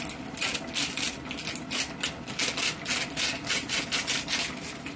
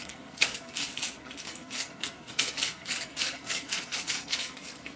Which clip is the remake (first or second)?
second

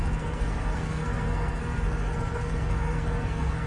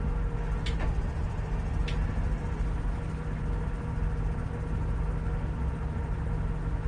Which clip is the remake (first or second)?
first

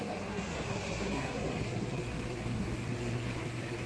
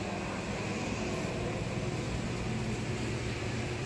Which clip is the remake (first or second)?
first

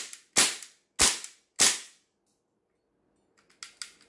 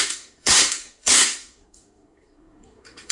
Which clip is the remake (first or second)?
second